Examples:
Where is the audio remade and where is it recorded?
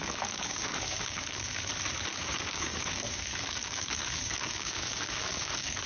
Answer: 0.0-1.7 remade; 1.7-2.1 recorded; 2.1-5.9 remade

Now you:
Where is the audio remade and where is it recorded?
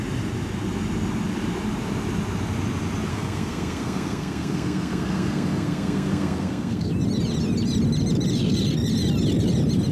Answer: 0.0-3.1 recorded; 3.1-6.9 remade; 6.9-9.9 recorded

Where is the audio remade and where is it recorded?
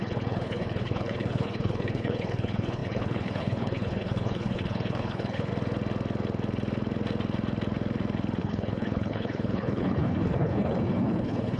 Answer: 0.0-5.5 remade; 5.5-8.4 recorded; 8.4-11.6 remade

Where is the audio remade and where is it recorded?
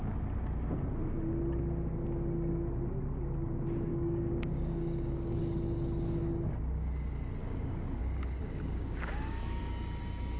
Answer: 0.0-3.9 recorded; 3.9-5.4 remade; 5.4-7.4 recorded; 7.4-8.0 remade; 8.0-8.4 recorded; 8.4-9.6 remade; 9.6-10.4 recorded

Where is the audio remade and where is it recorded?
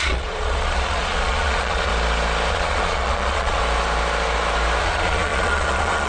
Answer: 0.0-1.9 remade; 1.9-2.5 recorded; 2.5-3.6 remade; 3.6-4.8 recorded; 4.8-6.1 remade